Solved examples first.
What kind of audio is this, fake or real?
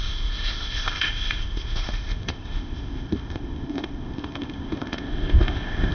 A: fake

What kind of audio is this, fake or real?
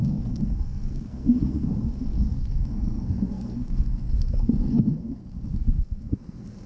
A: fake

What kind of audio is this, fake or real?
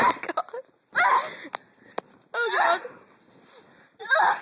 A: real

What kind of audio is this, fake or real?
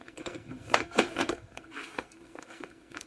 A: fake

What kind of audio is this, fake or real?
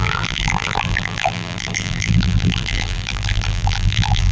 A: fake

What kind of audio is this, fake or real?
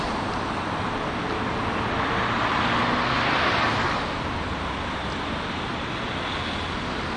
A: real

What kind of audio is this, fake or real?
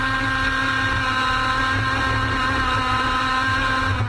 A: real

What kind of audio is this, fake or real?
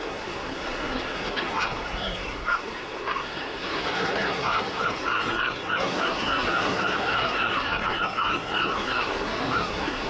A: fake